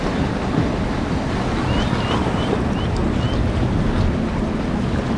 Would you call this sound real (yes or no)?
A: yes